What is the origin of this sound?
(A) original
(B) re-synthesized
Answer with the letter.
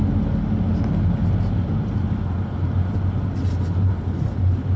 A